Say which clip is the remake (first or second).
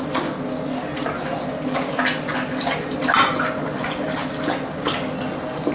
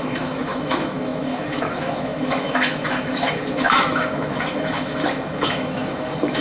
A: second